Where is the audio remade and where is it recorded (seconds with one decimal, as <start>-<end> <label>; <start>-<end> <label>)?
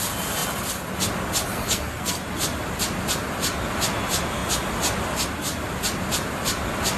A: 0.0-1.5 recorded; 1.5-2.2 remade; 2.2-7.0 recorded